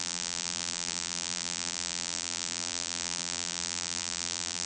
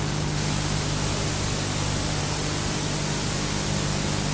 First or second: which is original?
second